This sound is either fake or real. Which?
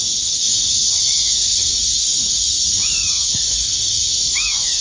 fake